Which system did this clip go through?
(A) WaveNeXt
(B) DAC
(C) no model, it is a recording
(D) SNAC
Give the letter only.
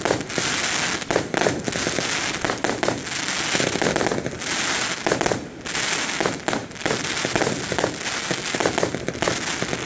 C